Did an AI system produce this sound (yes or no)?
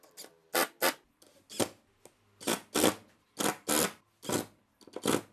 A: no